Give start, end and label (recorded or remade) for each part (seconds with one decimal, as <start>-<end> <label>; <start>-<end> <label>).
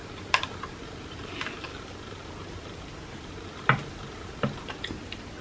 0.0-1.7 recorded; 1.7-4.4 remade; 4.4-5.4 recorded